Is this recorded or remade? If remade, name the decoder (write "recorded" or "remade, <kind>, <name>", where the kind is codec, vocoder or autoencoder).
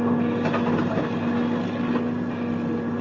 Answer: recorded